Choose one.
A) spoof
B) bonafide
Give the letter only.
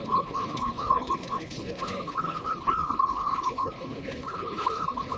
A